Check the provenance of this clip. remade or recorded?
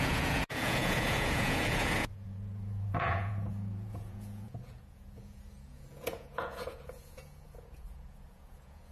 remade